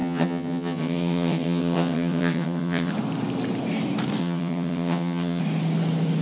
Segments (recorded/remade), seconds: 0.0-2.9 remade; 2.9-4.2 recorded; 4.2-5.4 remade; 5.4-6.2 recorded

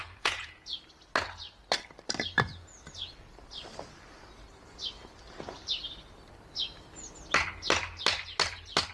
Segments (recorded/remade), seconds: 0.0-0.8 remade; 0.8-8.9 recorded

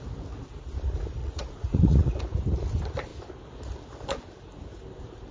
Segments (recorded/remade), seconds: 0.0-1.2 recorded; 1.2-2.2 remade; 2.2-5.3 recorded

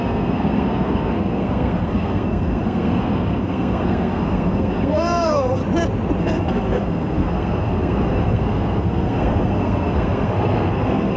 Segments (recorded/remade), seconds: 0.0-5.6 remade; 5.6-6.2 recorded; 6.2-11.2 remade

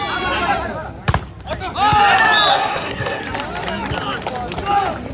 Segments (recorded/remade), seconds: 0.0-2.5 recorded; 2.5-3.2 remade; 3.2-5.1 recorded

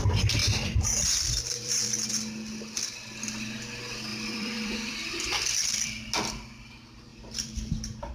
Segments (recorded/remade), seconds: 0.0-0.4 recorded; 0.4-2.1 remade; 2.1-4.1 recorded; 4.1-6.0 remade; 6.0-7.1 recorded; 7.1-8.1 remade